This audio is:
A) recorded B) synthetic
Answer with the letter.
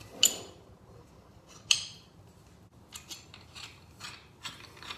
A